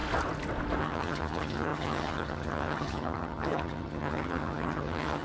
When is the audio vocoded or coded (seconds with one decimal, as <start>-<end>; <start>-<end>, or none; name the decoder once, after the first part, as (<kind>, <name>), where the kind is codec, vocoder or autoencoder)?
0.8-5.2 (vocoder, HiFi-GAN)